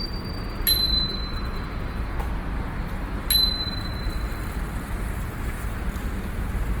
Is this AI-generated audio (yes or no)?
no